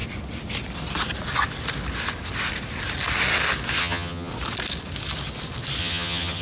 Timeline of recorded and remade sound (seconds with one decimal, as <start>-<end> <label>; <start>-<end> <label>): 0.0-3.8 recorded; 3.8-4.3 remade; 4.3-5.8 recorded; 5.8-6.4 remade

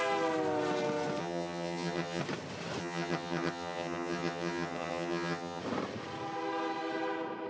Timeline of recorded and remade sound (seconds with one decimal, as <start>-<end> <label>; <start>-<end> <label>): 0.0-1.2 recorded; 1.2-2.2 remade; 2.2-2.8 recorded; 2.8-5.6 remade; 5.6-7.5 recorded

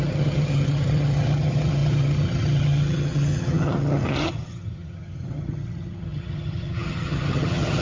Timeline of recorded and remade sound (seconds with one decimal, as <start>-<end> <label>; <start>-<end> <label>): 0.0-7.8 remade

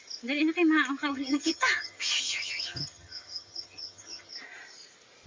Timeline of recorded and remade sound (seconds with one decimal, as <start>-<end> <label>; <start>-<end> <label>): 0.0-1.1 recorded; 1.1-4.3 remade; 4.3-5.3 recorded

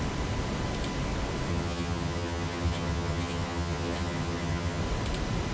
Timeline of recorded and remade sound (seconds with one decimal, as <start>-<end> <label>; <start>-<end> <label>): 0.0-1.5 recorded; 1.5-4.8 remade; 4.8-5.5 recorded

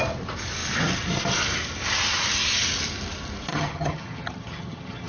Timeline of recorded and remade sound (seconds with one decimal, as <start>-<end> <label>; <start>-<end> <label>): 0.0-3.5 recorded; 3.5-5.1 remade

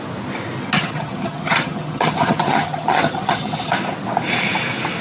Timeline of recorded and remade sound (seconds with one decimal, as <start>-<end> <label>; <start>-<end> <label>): 0.0-0.7 recorded; 0.7-3.7 remade; 3.7-5.0 recorded

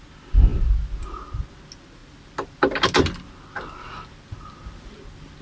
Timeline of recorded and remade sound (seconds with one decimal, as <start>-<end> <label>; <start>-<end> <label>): 0.0-5.4 recorded